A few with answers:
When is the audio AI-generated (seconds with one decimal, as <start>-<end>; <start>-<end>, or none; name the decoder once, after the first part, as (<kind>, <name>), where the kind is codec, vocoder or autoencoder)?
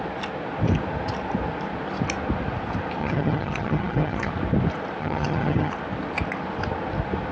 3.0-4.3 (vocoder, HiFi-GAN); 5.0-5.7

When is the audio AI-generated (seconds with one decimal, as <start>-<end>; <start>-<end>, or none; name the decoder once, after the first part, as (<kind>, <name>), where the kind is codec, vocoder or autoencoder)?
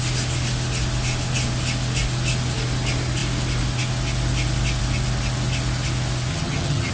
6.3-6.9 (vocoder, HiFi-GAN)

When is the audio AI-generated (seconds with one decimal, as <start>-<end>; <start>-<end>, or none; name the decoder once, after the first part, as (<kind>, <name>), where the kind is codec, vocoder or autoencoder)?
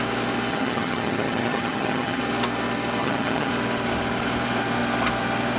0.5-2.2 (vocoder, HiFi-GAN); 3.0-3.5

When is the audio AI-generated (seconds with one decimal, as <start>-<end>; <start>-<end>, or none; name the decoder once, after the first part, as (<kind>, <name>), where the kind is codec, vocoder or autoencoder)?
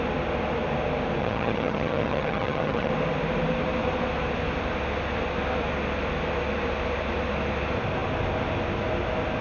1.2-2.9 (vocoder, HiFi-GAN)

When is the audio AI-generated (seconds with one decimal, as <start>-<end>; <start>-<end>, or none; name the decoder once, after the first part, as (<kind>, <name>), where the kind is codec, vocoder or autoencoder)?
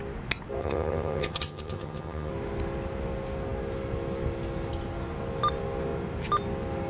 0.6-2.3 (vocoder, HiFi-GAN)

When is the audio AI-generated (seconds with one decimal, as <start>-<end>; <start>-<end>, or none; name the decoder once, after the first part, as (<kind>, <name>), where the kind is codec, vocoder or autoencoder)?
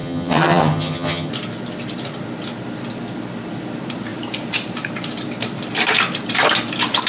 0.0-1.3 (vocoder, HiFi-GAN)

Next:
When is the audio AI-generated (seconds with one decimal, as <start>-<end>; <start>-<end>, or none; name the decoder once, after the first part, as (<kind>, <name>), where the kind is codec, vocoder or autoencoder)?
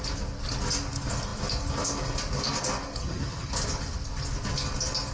3.0-3.5 (vocoder, HiFi-GAN)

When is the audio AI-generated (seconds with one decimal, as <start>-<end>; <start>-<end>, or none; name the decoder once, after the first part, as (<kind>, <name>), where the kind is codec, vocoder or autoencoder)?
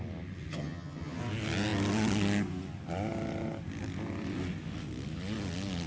0.5-1.2 (vocoder, HiFi-GAN)